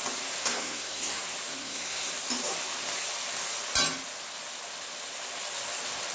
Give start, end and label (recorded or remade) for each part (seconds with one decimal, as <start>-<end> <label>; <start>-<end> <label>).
0.0-0.4 recorded; 0.4-1.2 remade; 1.2-1.6 recorded; 1.6-2.1 remade; 2.1-6.1 recorded